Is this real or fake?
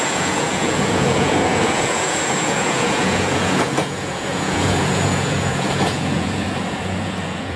fake